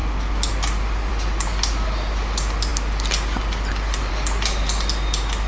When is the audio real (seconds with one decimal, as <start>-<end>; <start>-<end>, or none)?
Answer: 0.0-5.5

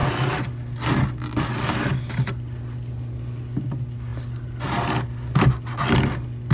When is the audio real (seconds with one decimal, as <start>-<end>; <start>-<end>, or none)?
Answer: 0.0-6.5

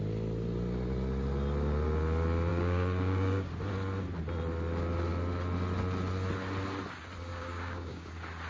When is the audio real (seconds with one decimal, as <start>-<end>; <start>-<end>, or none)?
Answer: 0.0-2.5; 3.5-7.3; 8.1-8.5

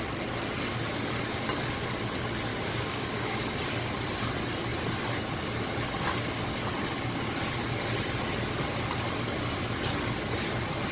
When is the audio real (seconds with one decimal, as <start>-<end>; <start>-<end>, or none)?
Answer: 0.0-2.5; 3.4-10.9

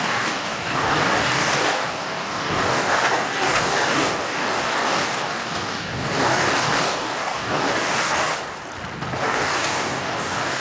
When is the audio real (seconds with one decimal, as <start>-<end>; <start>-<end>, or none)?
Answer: 8.3-9.2

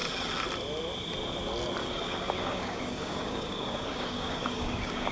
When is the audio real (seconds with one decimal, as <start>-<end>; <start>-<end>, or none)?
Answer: 0.0-1.8